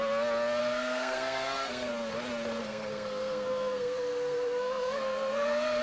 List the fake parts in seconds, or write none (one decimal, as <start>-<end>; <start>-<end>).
0.6-1.9; 2.6-5.8

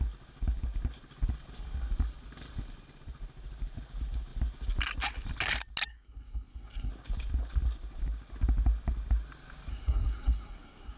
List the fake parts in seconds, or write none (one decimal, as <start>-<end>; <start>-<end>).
5.9-6.9; 9.7-11.0

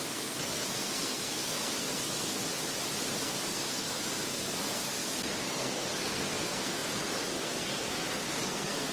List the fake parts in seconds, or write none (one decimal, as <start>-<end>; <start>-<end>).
0.0-2.4; 3.2-8.9

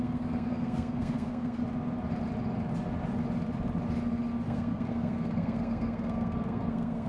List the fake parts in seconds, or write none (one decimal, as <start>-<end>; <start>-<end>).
0.0-1.6; 4.5-7.1

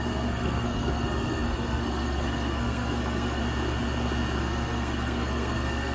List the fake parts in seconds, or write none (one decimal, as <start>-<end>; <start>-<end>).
0.0-3.4; 4.4-5.9

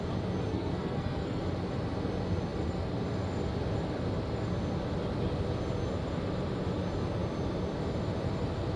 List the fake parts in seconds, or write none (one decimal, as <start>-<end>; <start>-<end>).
0.5-1.4

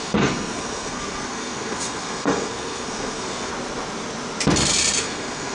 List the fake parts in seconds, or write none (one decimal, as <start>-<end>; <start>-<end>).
0.0-3.5; 5.0-5.5

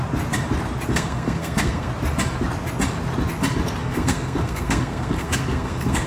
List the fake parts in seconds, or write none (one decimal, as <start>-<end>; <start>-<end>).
0.9-1.9; 3.8-6.1